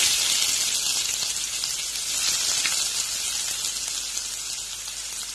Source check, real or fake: real